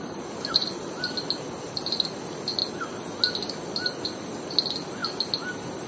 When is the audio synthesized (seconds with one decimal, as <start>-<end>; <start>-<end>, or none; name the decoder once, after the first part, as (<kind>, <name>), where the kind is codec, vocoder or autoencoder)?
none